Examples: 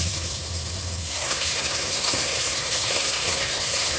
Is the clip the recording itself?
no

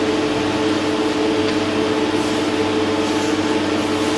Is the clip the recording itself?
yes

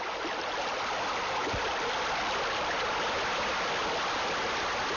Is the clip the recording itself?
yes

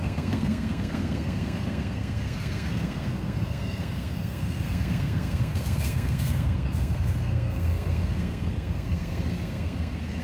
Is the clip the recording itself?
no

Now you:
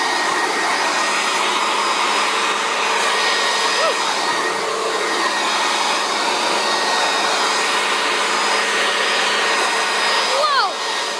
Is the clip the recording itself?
yes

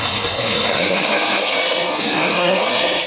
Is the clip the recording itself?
no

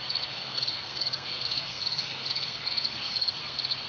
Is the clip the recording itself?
no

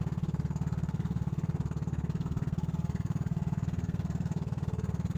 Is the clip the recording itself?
no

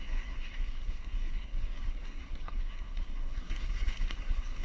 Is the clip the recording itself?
no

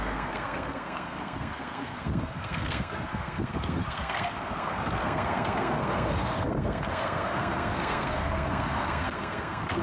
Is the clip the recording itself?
no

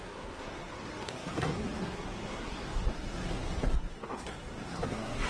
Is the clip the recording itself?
no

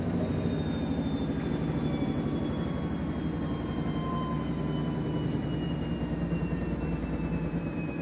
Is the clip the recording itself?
yes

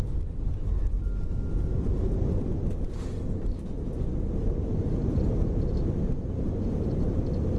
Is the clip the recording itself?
yes